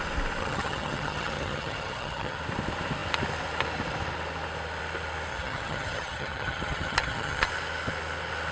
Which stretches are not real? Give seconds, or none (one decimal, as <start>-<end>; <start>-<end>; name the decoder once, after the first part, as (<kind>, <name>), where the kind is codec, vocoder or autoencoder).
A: 0.4-2.4 (vocoder, HiFi-GAN); 5.3-7.5